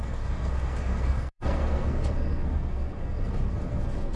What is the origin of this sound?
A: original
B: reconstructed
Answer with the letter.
B